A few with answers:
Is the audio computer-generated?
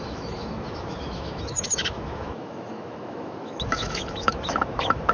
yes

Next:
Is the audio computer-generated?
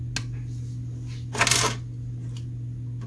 no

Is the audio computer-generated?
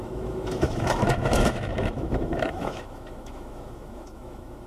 yes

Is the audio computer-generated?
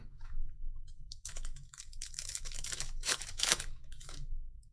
yes